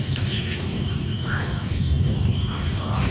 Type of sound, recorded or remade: remade